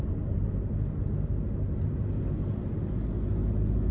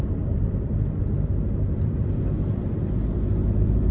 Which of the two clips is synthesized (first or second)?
second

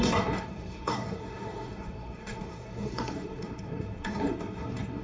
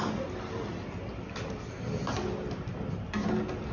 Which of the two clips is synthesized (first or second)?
first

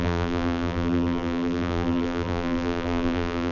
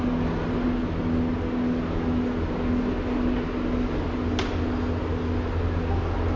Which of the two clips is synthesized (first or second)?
first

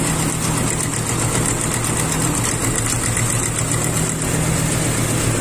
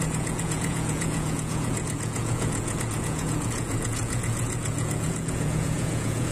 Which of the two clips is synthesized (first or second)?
second